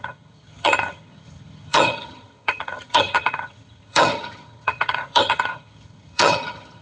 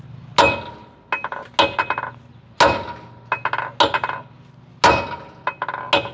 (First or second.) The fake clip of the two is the first